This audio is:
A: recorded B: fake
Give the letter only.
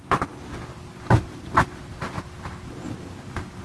A